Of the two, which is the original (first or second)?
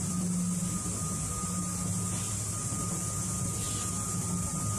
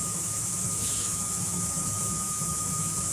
first